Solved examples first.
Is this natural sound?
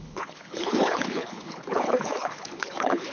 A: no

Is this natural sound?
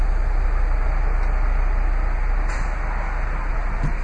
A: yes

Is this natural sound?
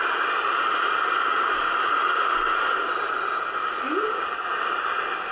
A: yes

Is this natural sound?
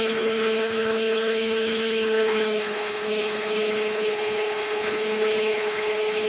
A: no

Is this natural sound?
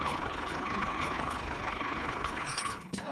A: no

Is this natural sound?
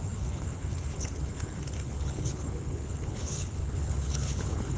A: no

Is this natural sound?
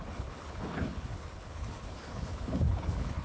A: no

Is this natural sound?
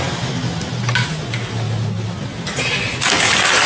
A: yes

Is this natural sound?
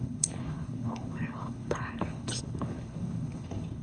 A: no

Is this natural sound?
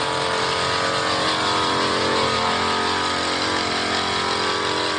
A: yes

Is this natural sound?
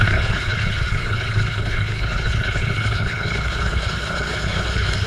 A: no